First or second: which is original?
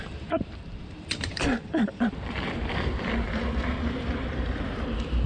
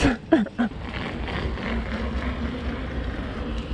second